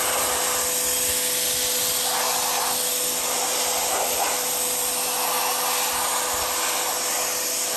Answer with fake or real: real